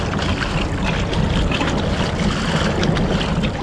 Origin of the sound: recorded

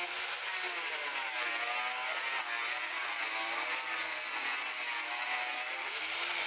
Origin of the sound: recorded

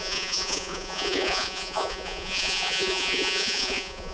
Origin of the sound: remade